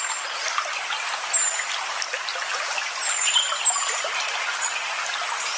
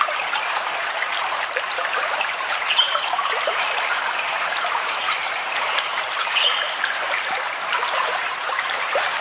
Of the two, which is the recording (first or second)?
first